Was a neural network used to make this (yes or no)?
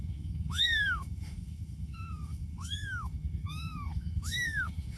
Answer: yes